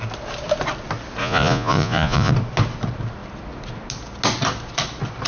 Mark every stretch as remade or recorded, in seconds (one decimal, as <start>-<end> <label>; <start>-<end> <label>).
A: 0.0-1.2 recorded; 1.2-2.3 remade; 2.3-5.3 recorded